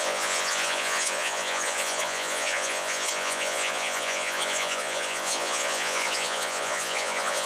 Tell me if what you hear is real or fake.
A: fake